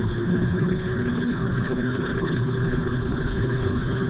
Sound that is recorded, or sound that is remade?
remade